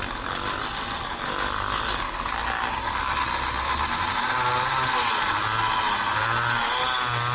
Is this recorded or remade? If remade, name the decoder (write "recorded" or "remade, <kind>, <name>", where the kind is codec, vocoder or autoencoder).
recorded